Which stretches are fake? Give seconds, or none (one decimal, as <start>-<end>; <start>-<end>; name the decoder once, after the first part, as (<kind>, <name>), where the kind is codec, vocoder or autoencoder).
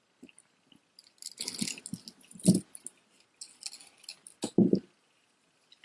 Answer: none